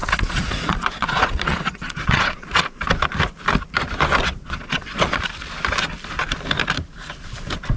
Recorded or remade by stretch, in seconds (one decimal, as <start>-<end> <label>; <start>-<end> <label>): 0.0-2.6 remade; 2.6-4.3 recorded; 4.3-5.2 remade; 5.2-7.8 recorded